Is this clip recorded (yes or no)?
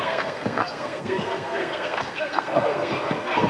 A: no